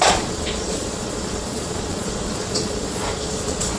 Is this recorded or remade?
remade